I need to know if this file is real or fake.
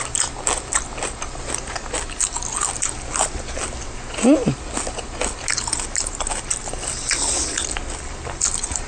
real